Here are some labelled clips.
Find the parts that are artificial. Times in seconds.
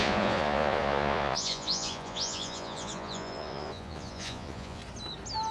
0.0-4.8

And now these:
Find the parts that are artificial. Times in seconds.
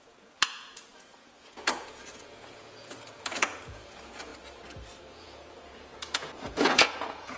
0.0-4.3; 5.0-7.4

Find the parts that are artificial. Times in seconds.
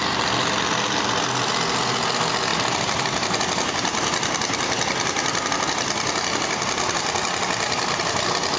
none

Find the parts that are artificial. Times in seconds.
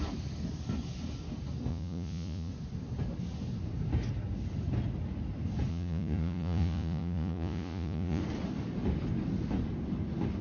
1.7-2.5; 5.7-8.2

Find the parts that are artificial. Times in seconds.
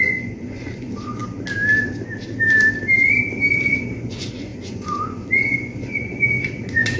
0.0-1.2; 3.5-7.0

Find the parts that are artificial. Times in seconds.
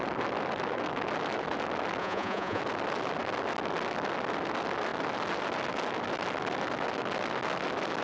2.0-2.6